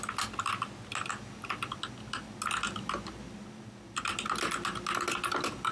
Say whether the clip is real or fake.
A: real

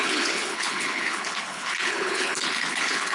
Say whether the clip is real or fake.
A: fake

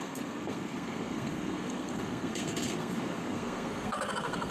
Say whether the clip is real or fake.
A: fake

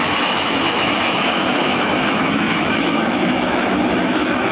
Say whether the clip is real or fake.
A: fake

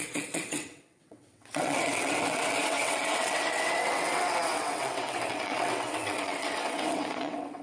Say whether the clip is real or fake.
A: fake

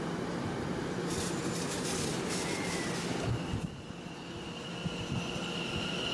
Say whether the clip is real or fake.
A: real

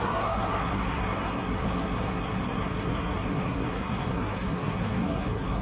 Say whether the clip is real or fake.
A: fake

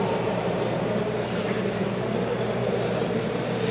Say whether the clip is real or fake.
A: fake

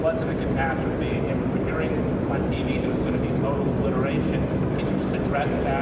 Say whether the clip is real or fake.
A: real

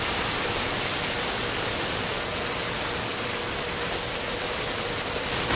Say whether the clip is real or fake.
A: real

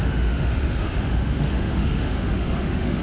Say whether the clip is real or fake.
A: fake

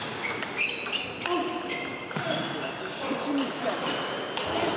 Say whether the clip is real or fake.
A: real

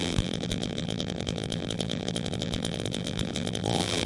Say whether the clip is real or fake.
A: fake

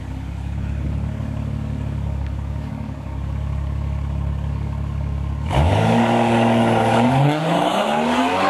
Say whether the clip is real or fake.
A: fake